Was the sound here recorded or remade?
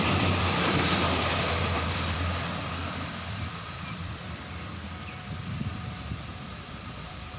remade